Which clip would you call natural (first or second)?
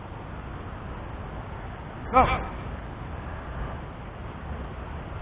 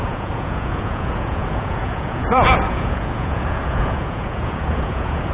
first